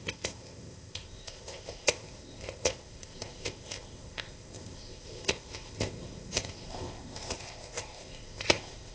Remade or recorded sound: remade